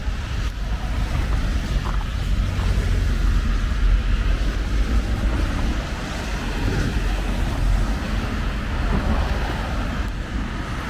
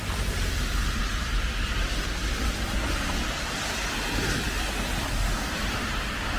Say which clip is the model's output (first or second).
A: second